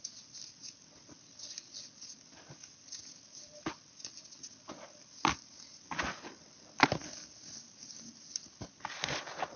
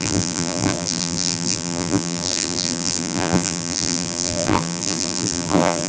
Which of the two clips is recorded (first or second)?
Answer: first